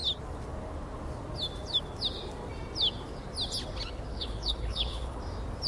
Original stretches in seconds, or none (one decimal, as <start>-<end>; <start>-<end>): 0.0-4.1; 5.2-5.7